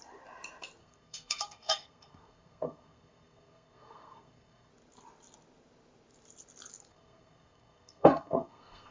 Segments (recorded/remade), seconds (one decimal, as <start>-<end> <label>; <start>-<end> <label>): 0.0-0.8 recorded; 0.8-4.7 remade; 4.7-6.9 recorded; 6.9-8.9 remade